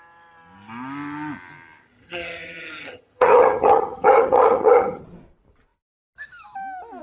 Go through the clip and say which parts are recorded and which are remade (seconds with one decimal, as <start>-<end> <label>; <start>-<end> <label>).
0.0-2.0 recorded; 2.0-5.0 remade; 5.0-7.0 recorded